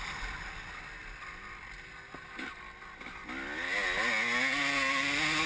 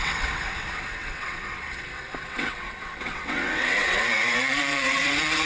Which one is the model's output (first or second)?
second